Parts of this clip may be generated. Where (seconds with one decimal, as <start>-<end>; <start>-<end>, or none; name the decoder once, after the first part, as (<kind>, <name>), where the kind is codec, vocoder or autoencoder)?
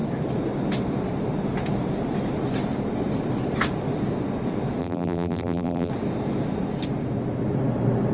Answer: 4.8-5.9 (vocoder, BigVGAN v2)